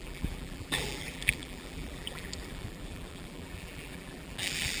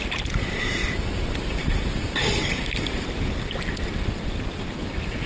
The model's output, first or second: first